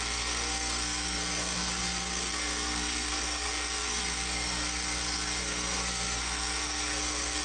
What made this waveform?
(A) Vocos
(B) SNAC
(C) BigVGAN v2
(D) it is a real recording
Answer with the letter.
B